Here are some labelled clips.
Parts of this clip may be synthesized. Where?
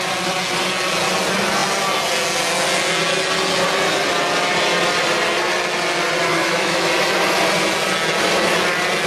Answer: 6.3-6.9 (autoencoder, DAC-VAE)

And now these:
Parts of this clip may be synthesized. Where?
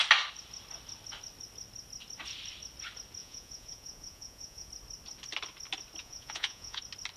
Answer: 3.2-4.7 (vocoder, Vocos); 6.0-6.8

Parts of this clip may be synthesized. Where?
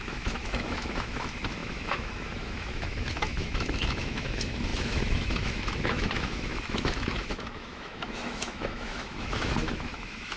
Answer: 0.0-10.4 (autoencoder, DAC-VAE)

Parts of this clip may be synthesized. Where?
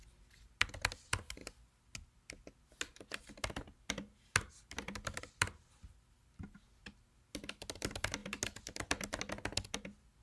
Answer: none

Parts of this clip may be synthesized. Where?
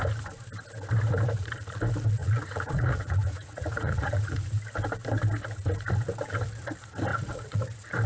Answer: 2.2-4.6 (vocoder, Vocos); 7.1-7.6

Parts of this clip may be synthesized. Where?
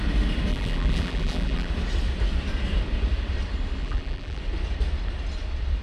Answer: 0.5-1.7 (vocoder, BigVGAN v2); 3.8-4.4